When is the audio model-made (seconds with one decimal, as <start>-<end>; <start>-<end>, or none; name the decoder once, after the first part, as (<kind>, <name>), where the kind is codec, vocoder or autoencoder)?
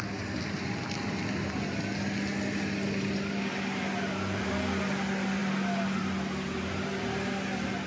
none